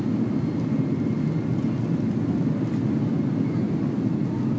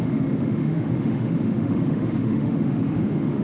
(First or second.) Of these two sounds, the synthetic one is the second